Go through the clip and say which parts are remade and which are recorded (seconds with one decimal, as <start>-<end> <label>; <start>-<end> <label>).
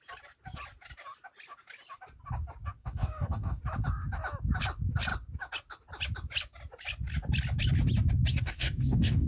0.0-2.8 recorded; 2.8-3.6 remade; 3.6-8.3 recorded; 8.3-9.3 remade